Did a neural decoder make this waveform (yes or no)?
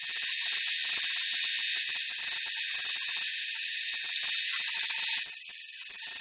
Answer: no